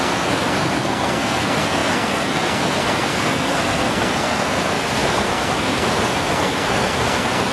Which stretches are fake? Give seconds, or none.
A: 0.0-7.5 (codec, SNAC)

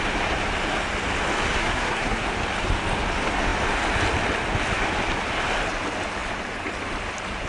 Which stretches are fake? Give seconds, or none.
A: 1.6-2.2 (codec, SNAC)

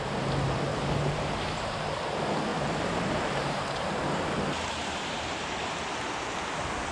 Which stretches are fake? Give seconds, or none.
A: 0.7-2.0 (vocoder, BigVGAN v2); 2.5-3.6; 4.8-5.6